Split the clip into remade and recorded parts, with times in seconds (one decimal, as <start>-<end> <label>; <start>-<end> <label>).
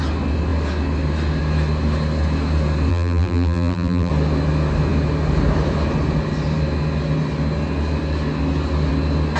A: 0.0-2.9 recorded; 2.9-4.1 remade; 4.1-9.4 recorded